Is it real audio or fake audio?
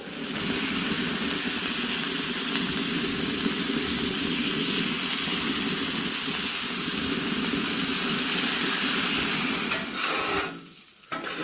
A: real